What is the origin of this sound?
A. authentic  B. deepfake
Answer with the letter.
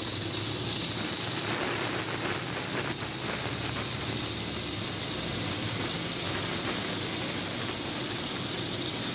A